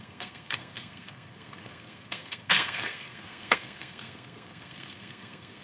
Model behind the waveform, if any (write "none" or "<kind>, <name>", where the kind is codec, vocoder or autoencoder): codec, SNAC